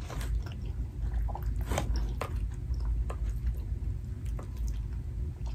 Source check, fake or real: real